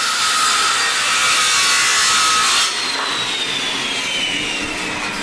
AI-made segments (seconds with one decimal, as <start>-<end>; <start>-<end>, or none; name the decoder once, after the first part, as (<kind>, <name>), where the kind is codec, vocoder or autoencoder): none